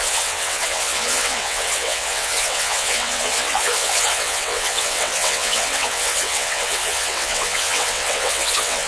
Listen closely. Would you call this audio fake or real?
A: fake